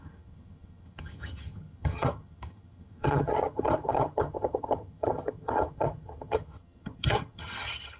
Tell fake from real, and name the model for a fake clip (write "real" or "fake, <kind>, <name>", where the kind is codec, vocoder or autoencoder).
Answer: fake, vocoder, HiFi-GAN